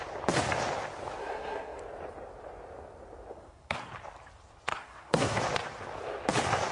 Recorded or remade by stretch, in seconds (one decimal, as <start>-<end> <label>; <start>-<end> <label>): 0.0-1.2 recorded; 1.2-1.8 remade; 1.8-3.3 recorded; 3.3-3.9 remade; 3.9-4.7 recorded; 4.7-5.4 remade; 5.4-6.7 recorded

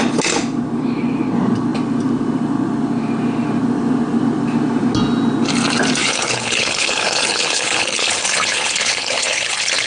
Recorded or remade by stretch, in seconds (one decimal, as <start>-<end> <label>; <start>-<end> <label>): 0.0-6.0 recorded; 6.0-9.9 remade

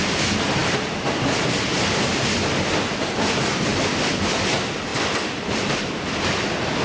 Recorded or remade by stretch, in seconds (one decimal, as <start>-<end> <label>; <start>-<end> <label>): 0.0-4.9 recorded; 4.9-5.8 remade; 5.8-6.8 recorded

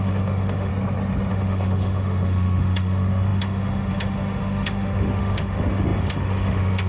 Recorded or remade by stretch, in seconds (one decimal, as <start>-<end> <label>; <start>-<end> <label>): 0.0-0.7 remade; 0.7-1.3 recorded; 1.3-6.9 remade

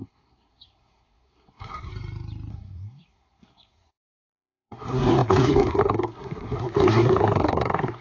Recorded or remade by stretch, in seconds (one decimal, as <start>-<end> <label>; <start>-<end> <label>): 0.0-1.9 remade; 1.9-2.5 recorded; 2.5-8.0 remade